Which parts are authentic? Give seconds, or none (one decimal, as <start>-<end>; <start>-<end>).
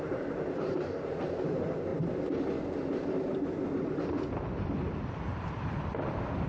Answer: 1.9-5.1